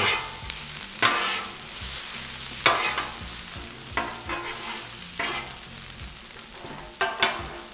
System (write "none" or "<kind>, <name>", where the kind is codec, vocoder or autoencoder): none